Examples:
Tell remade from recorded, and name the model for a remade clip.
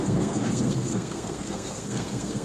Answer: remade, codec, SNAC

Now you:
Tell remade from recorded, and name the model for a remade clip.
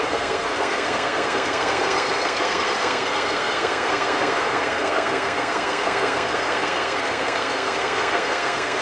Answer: remade, codec, SNAC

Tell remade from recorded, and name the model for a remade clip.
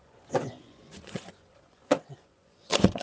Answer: remade, vocoder, Vocos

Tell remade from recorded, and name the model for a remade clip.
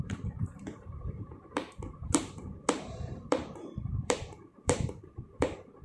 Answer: remade, vocoder, BigVGAN v2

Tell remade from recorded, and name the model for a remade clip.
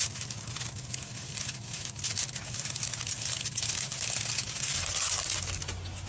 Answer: recorded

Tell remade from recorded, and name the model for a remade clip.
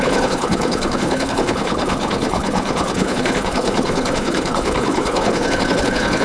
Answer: remade, codec, HILCodec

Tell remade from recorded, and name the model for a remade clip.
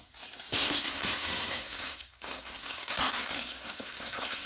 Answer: remade, codec, SNAC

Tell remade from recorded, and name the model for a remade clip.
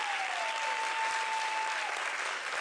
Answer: recorded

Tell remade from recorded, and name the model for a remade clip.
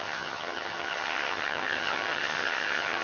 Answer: remade, vocoder, HiFi-GAN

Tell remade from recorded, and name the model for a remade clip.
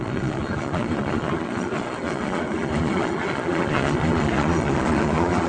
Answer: remade, vocoder, Vocos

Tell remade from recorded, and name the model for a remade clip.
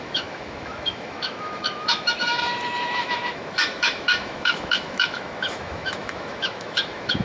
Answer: remade, autoencoder, DAC-VAE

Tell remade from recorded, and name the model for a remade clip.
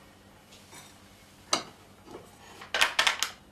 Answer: recorded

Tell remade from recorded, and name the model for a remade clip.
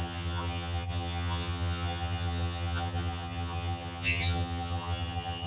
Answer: remade, vocoder, HiFi-GAN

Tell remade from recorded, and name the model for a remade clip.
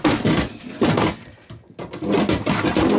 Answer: recorded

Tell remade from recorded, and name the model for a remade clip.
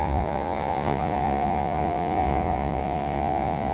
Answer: remade, vocoder, Vocos